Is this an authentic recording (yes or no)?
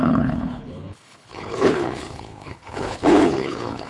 no